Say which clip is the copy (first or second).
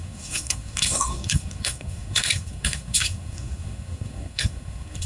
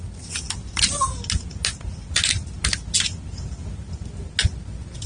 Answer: first